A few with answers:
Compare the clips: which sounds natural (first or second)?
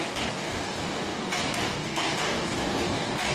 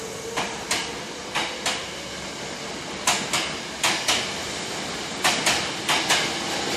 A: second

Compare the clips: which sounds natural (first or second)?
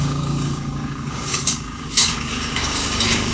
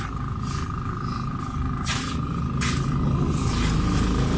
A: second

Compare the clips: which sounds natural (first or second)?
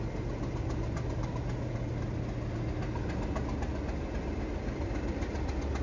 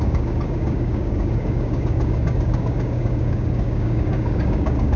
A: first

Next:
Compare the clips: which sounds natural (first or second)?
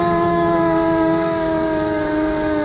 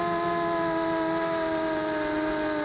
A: second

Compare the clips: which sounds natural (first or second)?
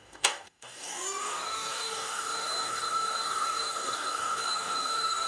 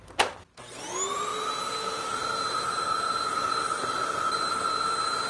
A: second